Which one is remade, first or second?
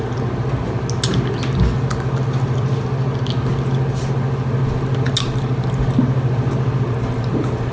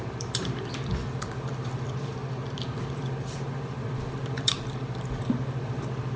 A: second